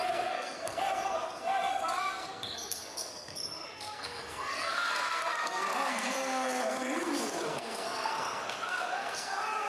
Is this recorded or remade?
remade